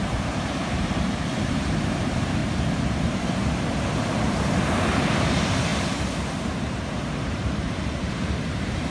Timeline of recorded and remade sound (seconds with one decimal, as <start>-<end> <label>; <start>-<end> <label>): 0.0-2.4 remade; 2.4-5.1 recorded; 5.1-8.9 remade